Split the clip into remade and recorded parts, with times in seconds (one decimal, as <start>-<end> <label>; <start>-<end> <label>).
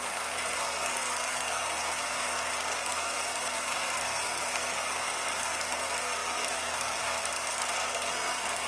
0.0-8.7 remade